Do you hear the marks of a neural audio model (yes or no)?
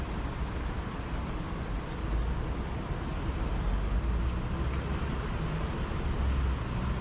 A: no